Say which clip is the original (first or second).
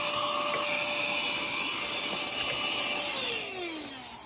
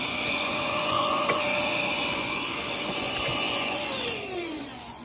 first